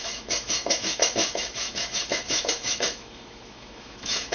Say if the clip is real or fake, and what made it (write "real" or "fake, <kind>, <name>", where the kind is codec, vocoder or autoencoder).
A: fake, autoencoder, DAC-VAE